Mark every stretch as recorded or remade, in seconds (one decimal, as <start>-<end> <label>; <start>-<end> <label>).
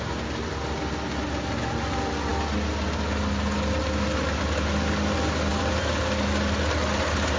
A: 0.0-5.5 recorded; 5.5-6.0 remade; 6.0-7.4 recorded